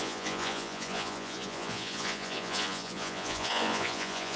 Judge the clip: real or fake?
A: fake